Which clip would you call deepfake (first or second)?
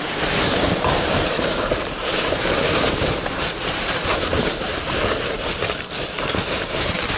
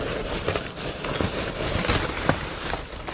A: first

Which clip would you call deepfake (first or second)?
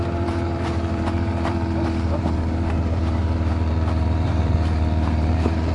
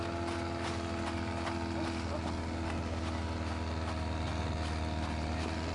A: first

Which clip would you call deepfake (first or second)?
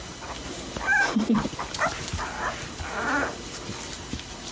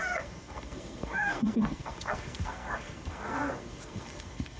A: second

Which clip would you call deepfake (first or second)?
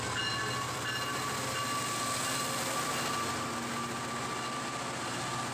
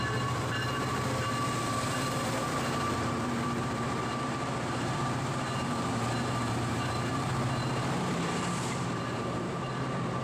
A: second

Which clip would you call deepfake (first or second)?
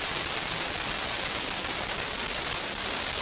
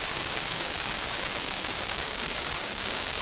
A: second